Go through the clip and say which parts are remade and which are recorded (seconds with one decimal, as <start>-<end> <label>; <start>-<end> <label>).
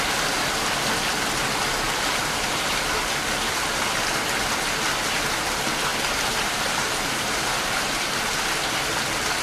0.0-2.2 recorded; 2.2-2.8 remade; 2.8-5.9 recorded; 5.9-8.3 remade; 8.3-9.4 recorded